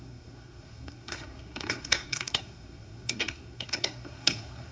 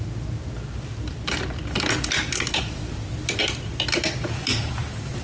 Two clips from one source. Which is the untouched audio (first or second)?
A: second